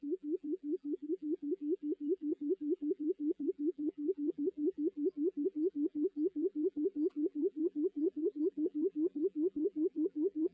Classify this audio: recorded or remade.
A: remade